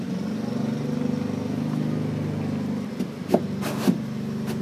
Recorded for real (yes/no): yes